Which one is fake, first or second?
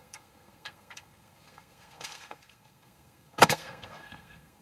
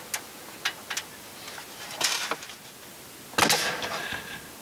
first